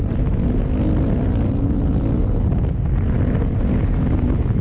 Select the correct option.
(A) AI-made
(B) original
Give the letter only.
B